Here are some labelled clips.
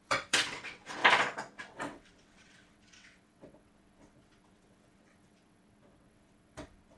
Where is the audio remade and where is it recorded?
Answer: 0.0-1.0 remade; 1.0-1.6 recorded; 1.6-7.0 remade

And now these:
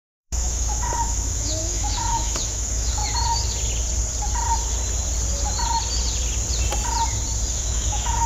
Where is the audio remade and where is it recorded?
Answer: 0.0-3.0 remade; 3.0-7.5 recorded; 7.5-8.3 remade

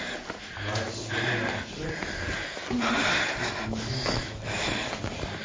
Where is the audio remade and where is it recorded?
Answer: 0.0-3.4 recorded; 3.4-4.9 remade; 4.9-5.4 recorded

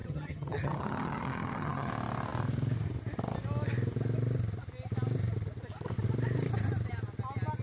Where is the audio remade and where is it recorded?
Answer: 0.0-1.9 remade; 1.9-7.6 recorded

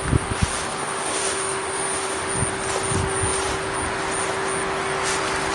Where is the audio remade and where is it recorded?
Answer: 0.0-0.8 recorded; 0.8-2.3 remade; 2.3-5.5 recorded

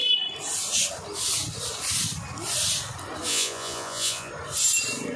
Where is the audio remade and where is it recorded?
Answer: 0.0-3.3 recorded; 3.3-4.3 remade; 4.3-5.2 recorded